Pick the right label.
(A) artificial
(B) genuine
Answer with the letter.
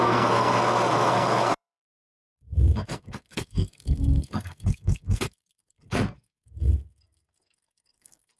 A